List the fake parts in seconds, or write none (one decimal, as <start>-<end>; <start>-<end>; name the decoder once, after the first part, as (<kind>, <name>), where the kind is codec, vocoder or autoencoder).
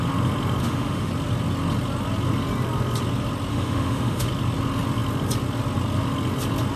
0.6-1.1 (autoencoder, DAC-VAE); 3.5-4.3